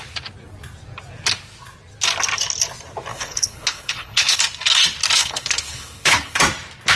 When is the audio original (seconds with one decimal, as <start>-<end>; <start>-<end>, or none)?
0.0-3.1; 4.4-5.2; 6.4-7.0